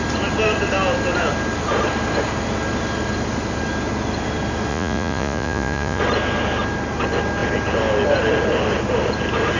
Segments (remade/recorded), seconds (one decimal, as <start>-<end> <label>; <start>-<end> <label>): 0.0-4.7 recorded; 4.7-6.0 remade; 6.0-9.6 recorded

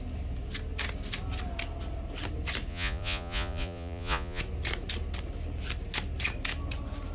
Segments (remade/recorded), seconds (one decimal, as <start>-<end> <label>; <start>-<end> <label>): 0.0-2.7 recorded; 2.7-4.4 remade; 4.4-7.1 recorded

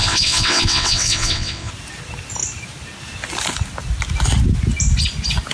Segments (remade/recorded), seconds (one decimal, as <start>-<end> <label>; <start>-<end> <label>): 0.0-1.7 remade; 1.7-5.5 recorded

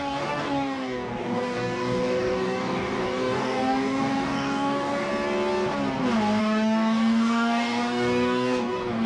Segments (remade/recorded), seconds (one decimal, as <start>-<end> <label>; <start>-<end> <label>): 0.0-5.1 remade; 5.1-6.4 recorded; 6.4-9.1 remade

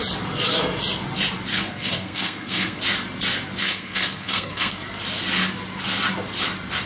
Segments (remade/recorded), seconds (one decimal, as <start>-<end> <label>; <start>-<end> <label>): 0.0-1.5 recorded; 1.5-2.8 remade; 2.8-3.6 recorded; 3.6-4.8 remade; 4.8-6.9 recorded

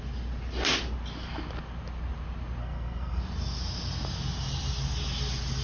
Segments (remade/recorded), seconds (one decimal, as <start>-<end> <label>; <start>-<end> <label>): 0.0-2.6 recorded; 2.6-3.2 remade; 3.2-5.6 recorded

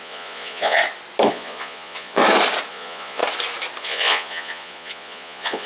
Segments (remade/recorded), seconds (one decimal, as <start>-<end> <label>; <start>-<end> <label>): 0.0-0.8 remade; 0.8-1.3 recorded; 1.3-2.2 remade; 2.2-2.7 recorded; 2.7-3.2 remade; 3.2-3.8 recorded; 3.8-5.7 remade